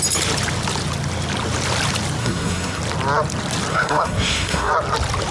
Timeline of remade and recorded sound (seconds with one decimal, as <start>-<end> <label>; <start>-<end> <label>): 0.0-2.2 recorded; 2.2-2.8 remade; 2.8-3.7 recorded; 3.7-4.7 remade; 4.7-5.3 recorded